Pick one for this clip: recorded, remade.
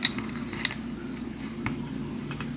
recorded